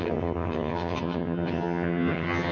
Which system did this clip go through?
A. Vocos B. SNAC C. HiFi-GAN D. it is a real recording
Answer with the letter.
C